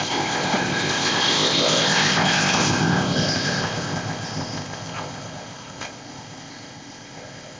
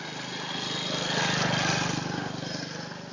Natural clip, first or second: second